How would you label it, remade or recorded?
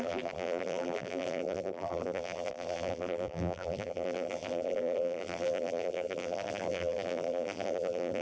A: remade